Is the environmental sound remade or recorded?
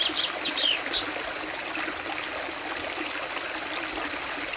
recorded